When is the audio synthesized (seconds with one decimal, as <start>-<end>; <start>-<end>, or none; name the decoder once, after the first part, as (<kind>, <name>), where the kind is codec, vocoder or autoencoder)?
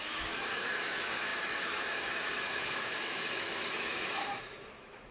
0.0-5.1 (autoencoder, DAC-VAE)